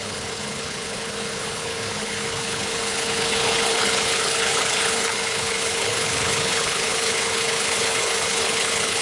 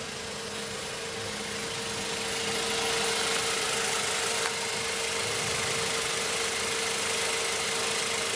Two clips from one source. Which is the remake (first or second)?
first